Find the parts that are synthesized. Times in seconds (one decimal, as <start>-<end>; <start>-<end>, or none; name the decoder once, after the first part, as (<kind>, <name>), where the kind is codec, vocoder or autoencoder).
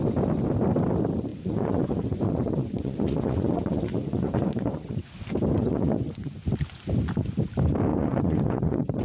1.3-5.1 (vocoder, Vocos); 5.6-6.5; 7.9-9.0